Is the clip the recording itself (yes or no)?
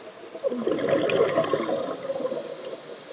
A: yes